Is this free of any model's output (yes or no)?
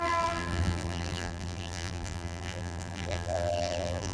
no